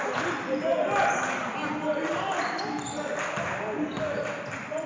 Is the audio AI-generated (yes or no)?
no